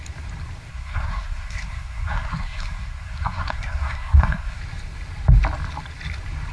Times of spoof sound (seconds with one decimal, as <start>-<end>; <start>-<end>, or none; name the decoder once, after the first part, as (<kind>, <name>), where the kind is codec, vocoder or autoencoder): 0.7-4.6 (codec, SNAC)